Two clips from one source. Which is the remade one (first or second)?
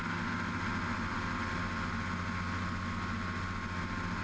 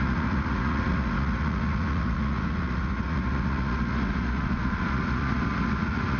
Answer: second